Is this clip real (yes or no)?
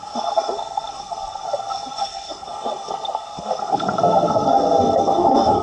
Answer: no